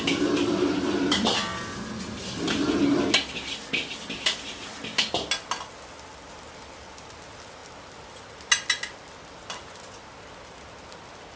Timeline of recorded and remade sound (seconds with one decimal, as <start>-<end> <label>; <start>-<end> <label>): 0.0-11.4 recorded